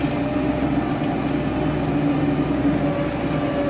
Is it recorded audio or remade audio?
recorded